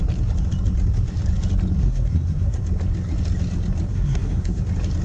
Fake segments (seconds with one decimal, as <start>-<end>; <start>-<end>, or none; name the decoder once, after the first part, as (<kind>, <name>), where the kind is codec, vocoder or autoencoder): 1.8-2.6 (codec, SNAC); 3.9-4.6